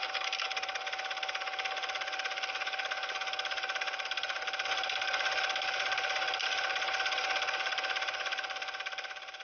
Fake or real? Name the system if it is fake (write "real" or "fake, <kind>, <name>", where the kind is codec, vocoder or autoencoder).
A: real